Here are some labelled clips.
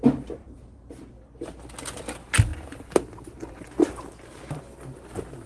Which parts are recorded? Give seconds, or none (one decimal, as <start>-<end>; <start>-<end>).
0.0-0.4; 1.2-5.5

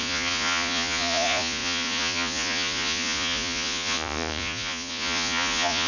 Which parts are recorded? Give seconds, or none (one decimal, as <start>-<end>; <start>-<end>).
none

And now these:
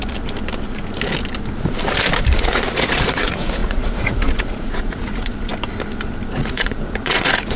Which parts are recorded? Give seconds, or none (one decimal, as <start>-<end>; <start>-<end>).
0.0-2.3; 5.5-6.3

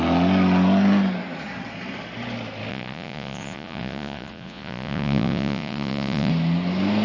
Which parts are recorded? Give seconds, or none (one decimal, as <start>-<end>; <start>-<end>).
0.0-2.7; 6.3-7.0

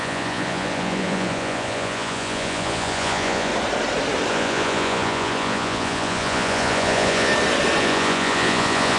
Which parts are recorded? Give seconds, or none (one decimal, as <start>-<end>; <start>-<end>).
3.5-4.3; 7.3-7.8

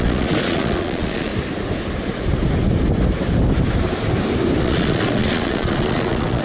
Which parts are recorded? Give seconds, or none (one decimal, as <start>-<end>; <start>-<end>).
1.3-4.6